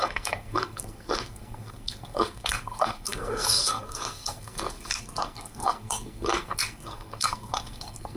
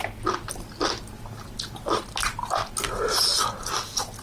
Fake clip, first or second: first